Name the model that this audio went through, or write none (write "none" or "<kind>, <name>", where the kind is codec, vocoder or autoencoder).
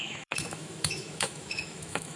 autoencoder, DAC-VAE